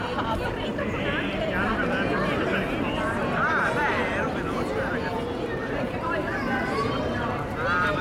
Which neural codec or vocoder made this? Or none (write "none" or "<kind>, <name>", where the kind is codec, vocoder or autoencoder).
vocoder, BigVGAN v2